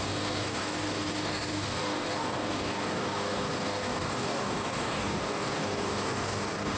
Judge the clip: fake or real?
fake